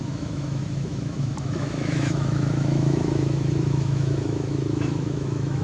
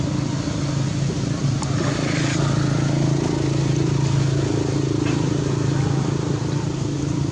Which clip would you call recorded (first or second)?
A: second